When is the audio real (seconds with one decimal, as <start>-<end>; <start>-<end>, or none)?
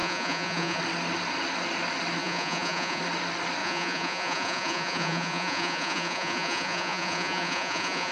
0.8-2.2; 3.0-3.6